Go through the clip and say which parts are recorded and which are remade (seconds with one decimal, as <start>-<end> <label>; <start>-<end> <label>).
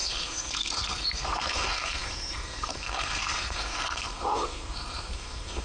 0.0-5.6 remade